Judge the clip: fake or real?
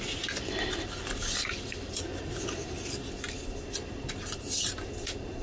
real